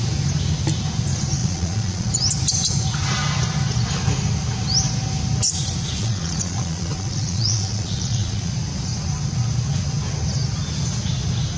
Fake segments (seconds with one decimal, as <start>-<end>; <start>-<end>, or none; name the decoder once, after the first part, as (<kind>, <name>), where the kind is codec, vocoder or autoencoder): 1.4-2.1 (vocoder, Vocos); 6.0-8.5